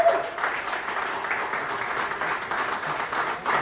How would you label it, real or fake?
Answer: real